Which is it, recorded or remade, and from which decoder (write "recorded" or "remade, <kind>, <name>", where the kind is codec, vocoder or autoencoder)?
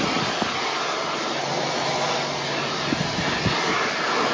recorded